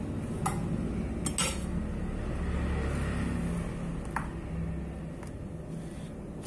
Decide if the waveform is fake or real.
real